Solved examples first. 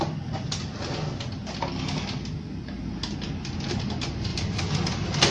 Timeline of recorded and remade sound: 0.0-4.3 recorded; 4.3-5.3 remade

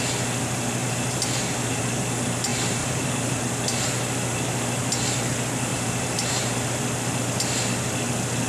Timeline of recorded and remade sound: 0.0-0.8 recorded; 0.8-1.8 remade; 1.8-2.5 recorded; 2.5-3.4 remade; 3.4-5.7 recorded; 5.7-6.5 remade; 6.5-8.5 recorded

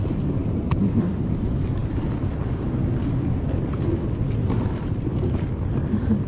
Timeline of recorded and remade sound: 0.0-0.4 recorded; 0.4-1.3 remade; 1.3-1.8 recorded; 1.8-5.2 remade; 5.2-6.3 recorded

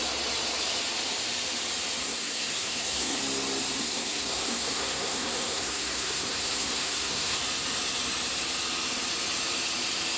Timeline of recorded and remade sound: 0.0-2.0 recorded; 2.0-3.2 remade; 3.2-3.8 recorded; 3.8-7.4 remade; 7.4-10.2 recorded

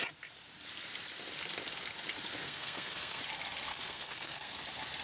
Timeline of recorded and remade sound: 0.0-2.4 recorded; 2.4-3.2 remade; 3.2-3.7 recorded; 3.7-4.6 remade; 4.6-5.0 recorded

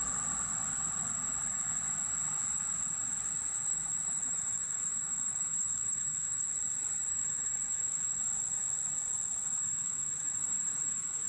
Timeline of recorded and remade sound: 0.0-3.7 recorded; 3.7-6.5 remade; 6.5-7.1 recorded; 7.1-8.2 remade; 8.2-9.6 recorded; 9.6-11.3 remade

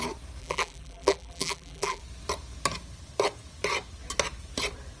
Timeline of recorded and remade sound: 0.0-0.4 recorded; 0.4-2.0 remade; 2.0-5.0 recorded

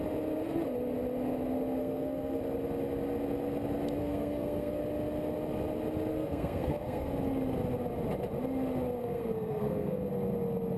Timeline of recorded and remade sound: 0.0-1.8 recorded; 1.8-2.4 remade; 2.4-4.0 recorded; 4.0-4.8 remade; 4.8-6.1 recorded; 6.1-7.1 remade; 7.1-9.0 recorded; 9.0-10.1 remade; 10.1-10.8 recorded